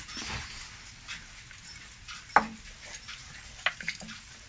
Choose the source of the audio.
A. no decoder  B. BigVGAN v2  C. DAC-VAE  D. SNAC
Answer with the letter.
A